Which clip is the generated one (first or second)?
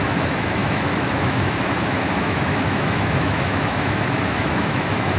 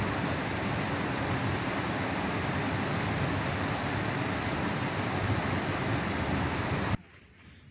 first